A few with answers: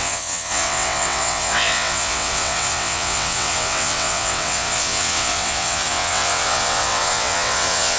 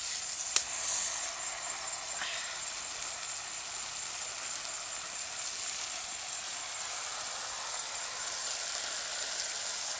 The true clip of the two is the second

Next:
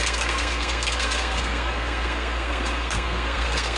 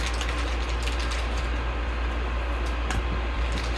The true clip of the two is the second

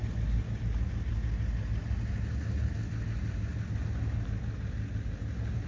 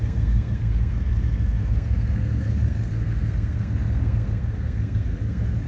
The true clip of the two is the first